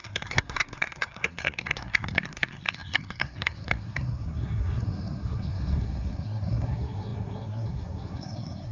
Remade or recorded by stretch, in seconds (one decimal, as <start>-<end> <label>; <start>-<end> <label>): 0.0-8.7 remade

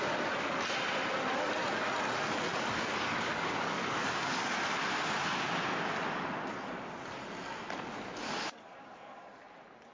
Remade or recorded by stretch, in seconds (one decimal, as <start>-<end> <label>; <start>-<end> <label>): 0.0-2.5 recorded; 2.5-4.5 remade; 4.5-9.9 recorded

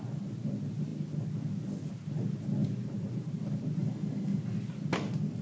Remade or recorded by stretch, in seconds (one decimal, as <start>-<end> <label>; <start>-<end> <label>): 0.0-3.8 recorded; 3.8-4.4 remade; 4.4-5.4 recorded

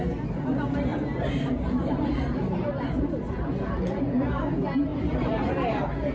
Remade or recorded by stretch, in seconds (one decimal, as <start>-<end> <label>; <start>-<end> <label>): 0.0-0.9 recorded; 0.9-3.5 remade; 3.5-4.9 recorded; 4.9-5.5 remade; 5.5-6.1 recorded

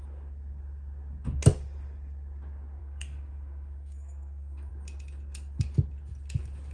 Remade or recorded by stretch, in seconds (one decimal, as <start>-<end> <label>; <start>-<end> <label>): 0.0-2.8 recorded; 2.8-4.7 remade; 4.7-6.7 recorded